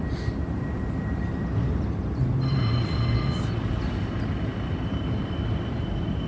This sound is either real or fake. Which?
real